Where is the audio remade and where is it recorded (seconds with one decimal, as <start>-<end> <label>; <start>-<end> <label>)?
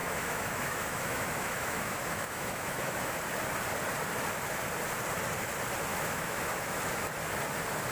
0.0-3.1 remade; 3.1-5.9 recorded; 5.9-6.8 remade; 6.8-7.9 recorded